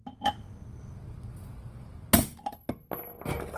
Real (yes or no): yes